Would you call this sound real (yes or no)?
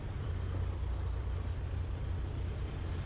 yes